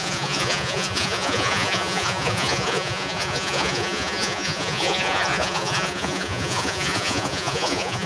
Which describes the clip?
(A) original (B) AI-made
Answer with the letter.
B